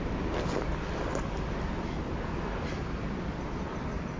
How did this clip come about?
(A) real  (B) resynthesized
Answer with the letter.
A